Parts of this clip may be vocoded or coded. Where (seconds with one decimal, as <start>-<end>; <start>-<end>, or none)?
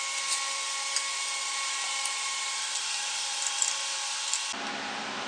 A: 1.1-4.3